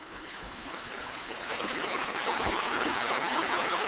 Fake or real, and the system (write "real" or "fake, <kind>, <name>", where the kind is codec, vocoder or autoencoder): fake, codec, HILCodec